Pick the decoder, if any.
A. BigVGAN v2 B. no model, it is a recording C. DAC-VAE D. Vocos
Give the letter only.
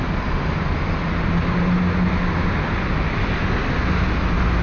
B